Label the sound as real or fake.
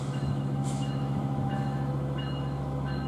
fake